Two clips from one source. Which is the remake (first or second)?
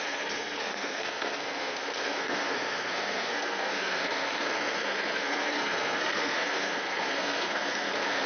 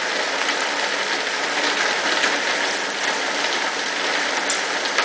first